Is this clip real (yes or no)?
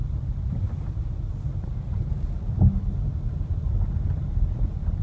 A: yes